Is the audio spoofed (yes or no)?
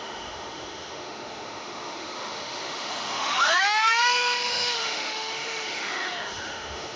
yes